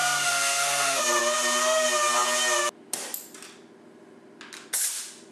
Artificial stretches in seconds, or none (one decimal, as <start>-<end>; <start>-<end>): 0.0-1.2